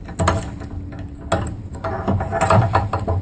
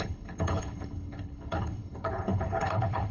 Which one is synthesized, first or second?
second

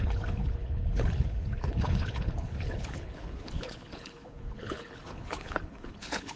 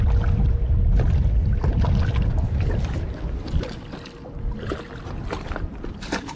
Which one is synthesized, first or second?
first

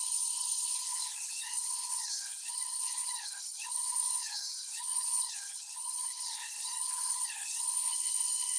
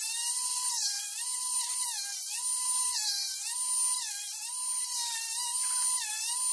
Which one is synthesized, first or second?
first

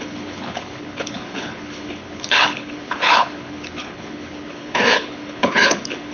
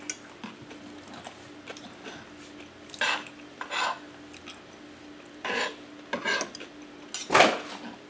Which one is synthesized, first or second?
first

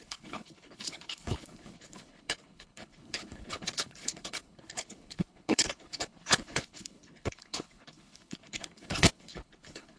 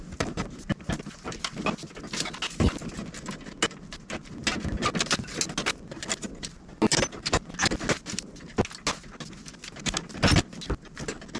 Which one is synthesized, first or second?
first